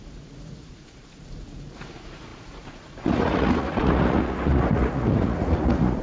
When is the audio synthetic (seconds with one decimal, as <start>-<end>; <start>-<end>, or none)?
0.0-6.0